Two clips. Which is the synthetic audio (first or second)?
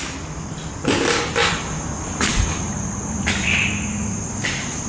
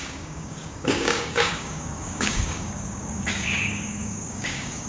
second